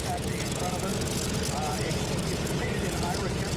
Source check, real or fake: fake